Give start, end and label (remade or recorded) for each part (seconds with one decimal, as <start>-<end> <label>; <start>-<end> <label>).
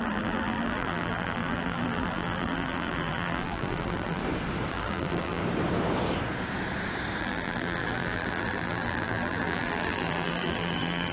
0.0-4.2 remade; 4.2-4.7 recorded; 4.7-5.4 remade; 5.4-7.2 recorded; 7.2-11.1 remade